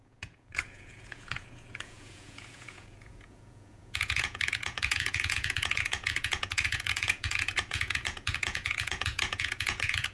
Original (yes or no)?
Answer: no